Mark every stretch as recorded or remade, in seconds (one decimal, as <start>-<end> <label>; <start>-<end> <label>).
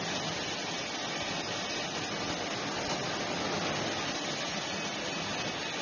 0.0-5.8 recorded